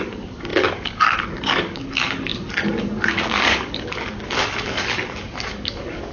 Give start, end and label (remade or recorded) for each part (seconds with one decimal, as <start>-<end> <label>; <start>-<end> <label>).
0.0-6.1 remade